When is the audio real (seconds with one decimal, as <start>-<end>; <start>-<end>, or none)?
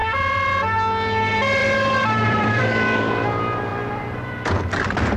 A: 0.5-1.6; 3.0-3.7